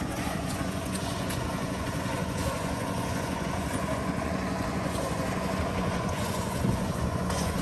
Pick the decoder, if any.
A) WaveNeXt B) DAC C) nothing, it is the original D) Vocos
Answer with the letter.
D